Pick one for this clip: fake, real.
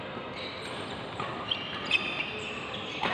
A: real